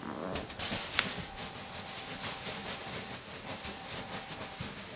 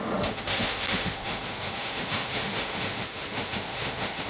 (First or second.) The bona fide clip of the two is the first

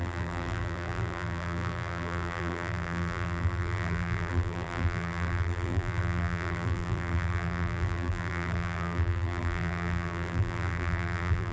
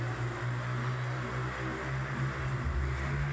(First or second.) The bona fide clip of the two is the second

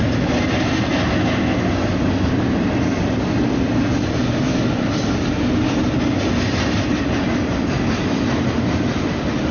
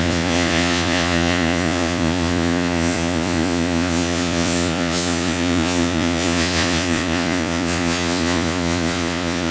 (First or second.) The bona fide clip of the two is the first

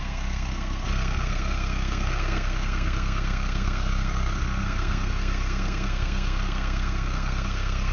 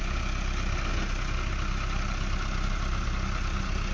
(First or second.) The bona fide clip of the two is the second